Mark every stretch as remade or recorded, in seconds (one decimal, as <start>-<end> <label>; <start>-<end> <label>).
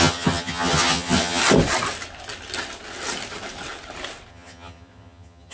0.0-1.4 remade; 1.4-4.3 recorded; 4.3-5.5 remade